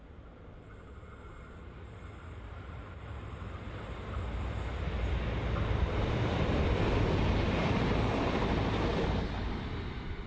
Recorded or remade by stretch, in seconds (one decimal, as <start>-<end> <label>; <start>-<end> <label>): 0.0-1.6 recorded; 1.6-3.7 remade; 3.7-10.3 recorded